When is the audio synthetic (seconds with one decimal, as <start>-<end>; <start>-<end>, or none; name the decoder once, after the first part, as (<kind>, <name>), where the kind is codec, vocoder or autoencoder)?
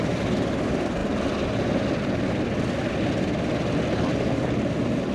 none